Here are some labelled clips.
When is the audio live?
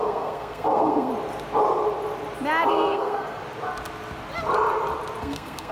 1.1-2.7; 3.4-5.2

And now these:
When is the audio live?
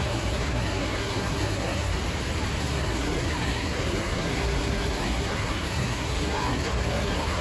1.9-2.6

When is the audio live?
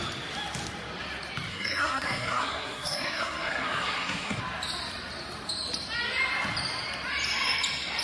0.0-1.5; 4.4-8.0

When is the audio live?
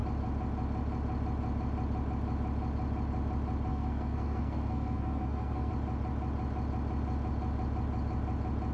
0.0-3.7; 5.7-8.7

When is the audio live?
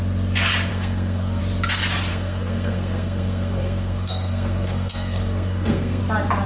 0.0-0.7; 1.4-2.1; 6.0-6.5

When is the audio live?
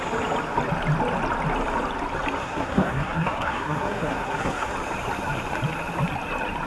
0.0-2.4; 4.7-6.7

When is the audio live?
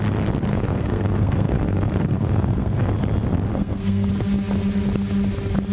0.0-0.5; 2.9-3.5; 4.1-5.7